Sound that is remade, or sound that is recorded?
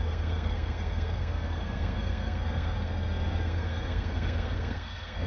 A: remade